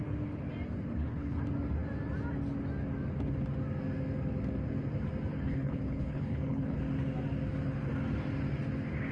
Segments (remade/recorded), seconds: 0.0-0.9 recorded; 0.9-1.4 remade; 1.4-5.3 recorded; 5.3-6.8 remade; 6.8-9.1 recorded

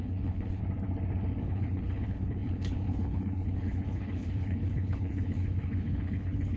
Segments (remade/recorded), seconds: 0.0-0.6 remade; 0.6-1.4 recorded; 1.4-6.6 remade

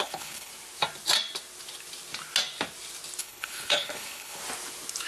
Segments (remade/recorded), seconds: 0.0-0.5 remade; 0.5-3.2 recorded; 3.2-4.4 remade; 4.4-5.1 recorded